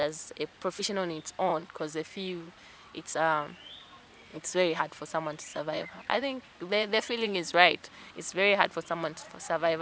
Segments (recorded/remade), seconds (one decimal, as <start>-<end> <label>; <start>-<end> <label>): 0.0-1.5 recorded; 1.5-3.0 remade; 3.0-4.3 recorded; 4.3-4.8 remade; 4.8-5.5 recorded; 5.5-8.1 remade; 8.1-9.8 recorded